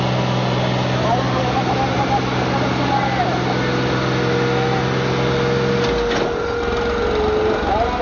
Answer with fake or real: real